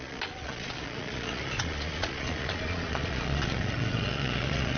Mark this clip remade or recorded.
remade